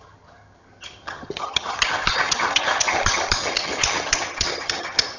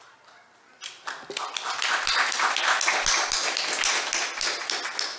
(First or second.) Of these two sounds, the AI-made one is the first